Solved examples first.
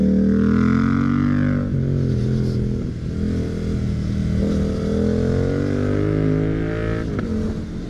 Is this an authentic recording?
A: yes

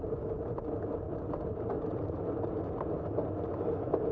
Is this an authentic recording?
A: yes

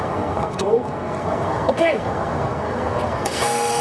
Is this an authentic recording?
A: no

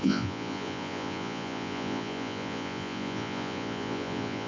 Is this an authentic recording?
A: no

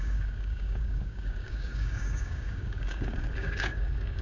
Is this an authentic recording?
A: no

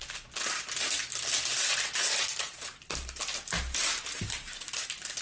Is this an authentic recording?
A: yes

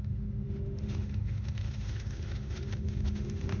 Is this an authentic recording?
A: no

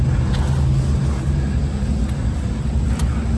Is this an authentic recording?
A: yes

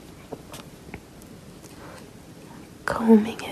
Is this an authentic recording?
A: yes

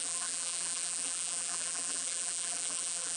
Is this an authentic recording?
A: no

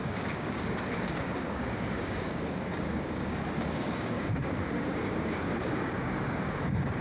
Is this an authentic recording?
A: no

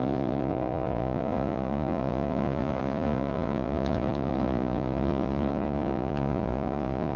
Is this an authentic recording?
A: no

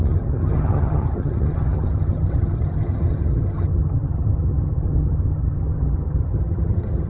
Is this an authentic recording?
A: no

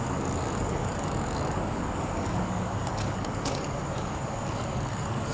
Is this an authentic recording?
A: no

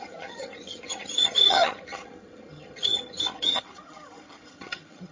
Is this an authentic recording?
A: no